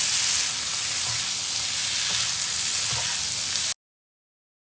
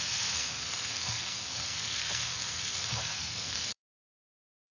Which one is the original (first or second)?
first